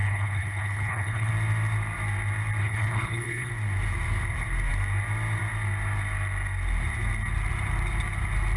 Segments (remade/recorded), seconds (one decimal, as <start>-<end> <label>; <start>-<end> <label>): 0.0-1.3 remade; 1.3-2.6 recorded; 2.6-3.5 remade; 3.5-8.6 recorded